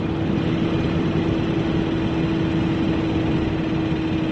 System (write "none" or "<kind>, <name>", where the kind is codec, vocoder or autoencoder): none